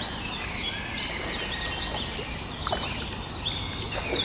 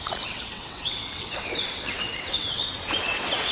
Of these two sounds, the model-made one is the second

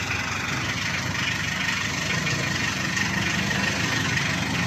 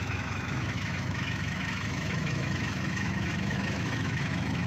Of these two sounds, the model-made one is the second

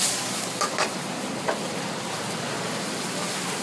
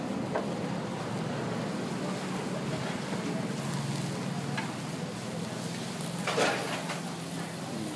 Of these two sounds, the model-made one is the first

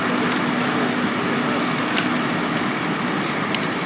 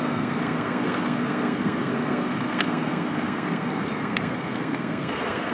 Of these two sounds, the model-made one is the second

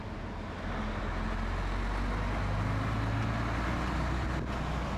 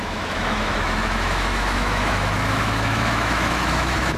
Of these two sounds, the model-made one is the second